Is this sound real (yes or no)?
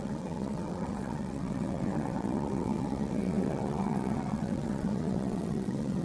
no